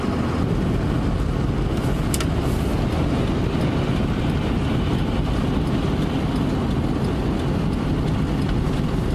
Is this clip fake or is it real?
real